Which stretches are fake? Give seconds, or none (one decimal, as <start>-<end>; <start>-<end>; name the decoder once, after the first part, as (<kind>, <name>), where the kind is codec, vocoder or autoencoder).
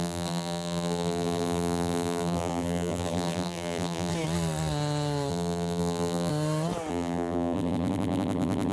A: 0.0-4.1 (vocoder, BigVGAN v2); 5.3-6.3; 6.9-8.7